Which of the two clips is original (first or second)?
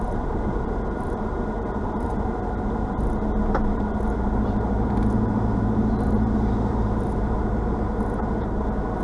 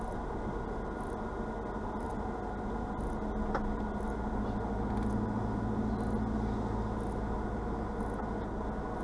second